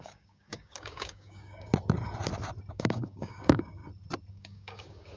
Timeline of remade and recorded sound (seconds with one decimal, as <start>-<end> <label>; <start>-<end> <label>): 0.0-1.7 remade; 1.7-2.7 recorded; 2.7-3.8 remade; 3.8-4.3 recorded; 4.3-5.2 remade